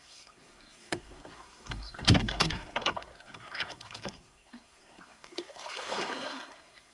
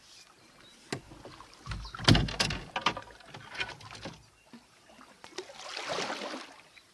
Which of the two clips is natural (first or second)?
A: second